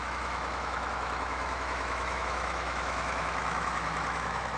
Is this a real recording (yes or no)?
no